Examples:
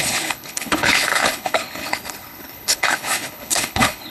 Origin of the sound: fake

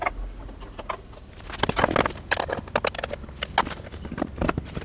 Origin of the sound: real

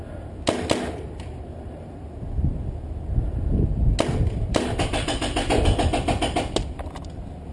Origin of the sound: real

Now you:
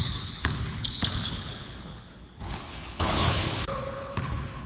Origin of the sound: fake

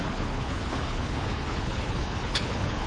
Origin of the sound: fake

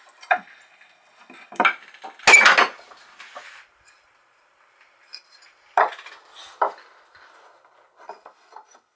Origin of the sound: real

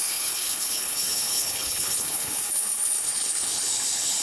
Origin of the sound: fake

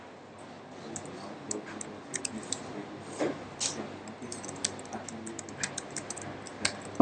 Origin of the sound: real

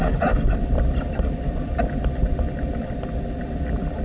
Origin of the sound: real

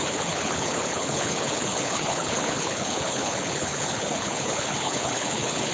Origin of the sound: fake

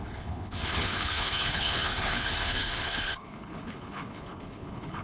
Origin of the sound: fake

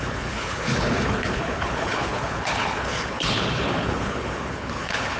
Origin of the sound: fake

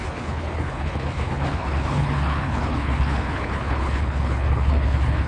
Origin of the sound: fake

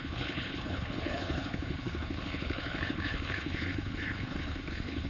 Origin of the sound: fake